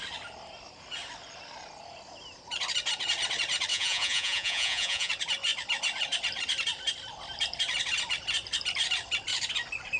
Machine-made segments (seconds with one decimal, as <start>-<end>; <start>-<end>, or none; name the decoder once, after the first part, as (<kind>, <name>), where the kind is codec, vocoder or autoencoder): 3.7-5.1 (vocoder, Vocos)